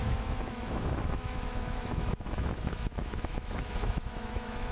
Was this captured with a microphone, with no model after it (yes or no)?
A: no